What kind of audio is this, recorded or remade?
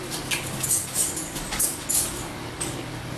remade